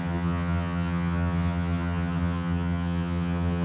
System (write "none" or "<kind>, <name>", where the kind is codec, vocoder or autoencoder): vocoder, HiFi-GAN